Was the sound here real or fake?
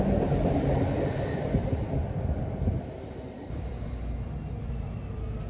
fake